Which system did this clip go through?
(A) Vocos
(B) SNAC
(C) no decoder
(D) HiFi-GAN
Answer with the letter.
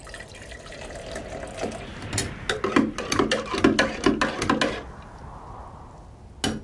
C